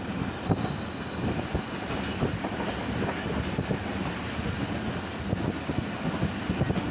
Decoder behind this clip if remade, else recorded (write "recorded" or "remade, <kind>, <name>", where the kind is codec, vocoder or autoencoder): recorded